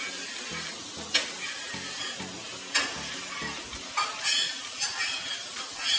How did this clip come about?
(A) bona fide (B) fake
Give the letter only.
A